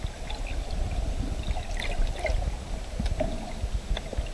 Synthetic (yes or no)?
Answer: no